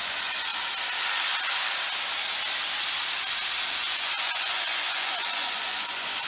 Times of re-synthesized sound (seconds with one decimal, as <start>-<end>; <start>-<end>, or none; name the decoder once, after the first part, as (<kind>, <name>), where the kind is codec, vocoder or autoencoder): 0.0-0.5 (vocoder, Vocos); 3.7-6.3